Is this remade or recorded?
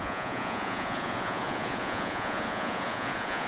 remade